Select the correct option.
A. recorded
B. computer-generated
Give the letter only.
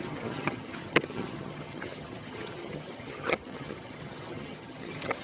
B